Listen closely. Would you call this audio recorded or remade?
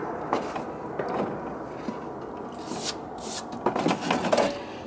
recorded